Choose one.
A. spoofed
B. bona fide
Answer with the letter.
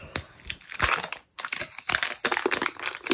B